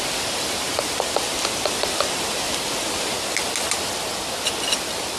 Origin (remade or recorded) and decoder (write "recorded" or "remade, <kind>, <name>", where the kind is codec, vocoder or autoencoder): recorded